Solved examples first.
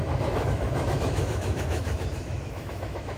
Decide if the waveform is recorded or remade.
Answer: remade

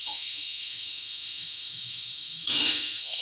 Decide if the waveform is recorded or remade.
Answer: remade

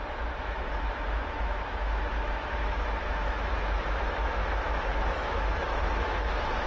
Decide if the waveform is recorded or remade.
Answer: remade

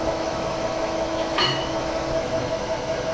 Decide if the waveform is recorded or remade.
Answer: remade